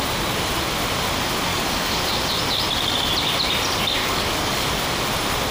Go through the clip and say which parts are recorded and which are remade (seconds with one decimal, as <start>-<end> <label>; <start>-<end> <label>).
0.0-1.5 recorded; 1.5-2.0 remade; 2.0-4.0 recorded; 4.0-4.7 remade; 4.7-5.5 recorded